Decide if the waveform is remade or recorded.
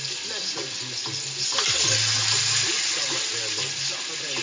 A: recorded